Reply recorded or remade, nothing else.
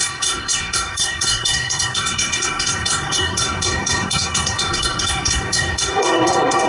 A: remade